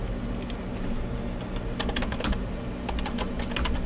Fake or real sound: real